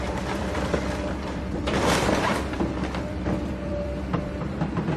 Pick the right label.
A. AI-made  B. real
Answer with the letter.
A